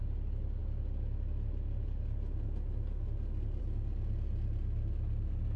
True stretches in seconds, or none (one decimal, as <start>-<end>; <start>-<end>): 0.0-5.6